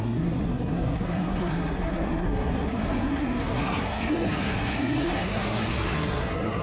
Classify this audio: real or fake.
fake